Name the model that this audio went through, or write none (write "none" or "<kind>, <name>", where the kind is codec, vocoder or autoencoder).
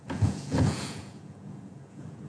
vocoder, Vocos